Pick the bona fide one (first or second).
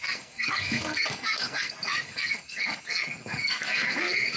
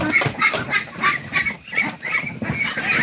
second